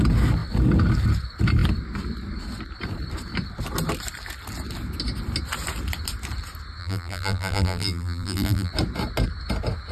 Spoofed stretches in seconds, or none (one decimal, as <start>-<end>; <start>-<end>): 6.8-8.7